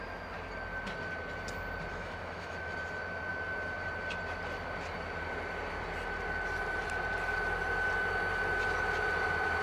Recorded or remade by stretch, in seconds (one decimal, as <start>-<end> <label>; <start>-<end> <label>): 0.0-1.9 recorded; 1.9-2.7 remade; 2.7-9.6 recorded